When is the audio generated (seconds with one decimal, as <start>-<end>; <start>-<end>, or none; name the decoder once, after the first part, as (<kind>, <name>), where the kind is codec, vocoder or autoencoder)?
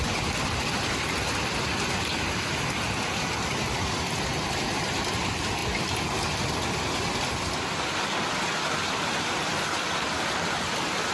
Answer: none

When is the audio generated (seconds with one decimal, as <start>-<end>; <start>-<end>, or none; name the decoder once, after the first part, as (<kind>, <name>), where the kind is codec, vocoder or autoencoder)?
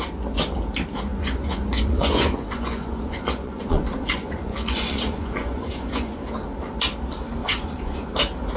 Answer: 1.1-6.2 (vocoder, Vocos); 7.4-8.1